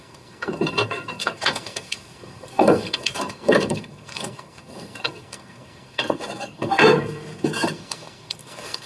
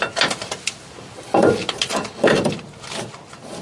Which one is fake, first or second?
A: first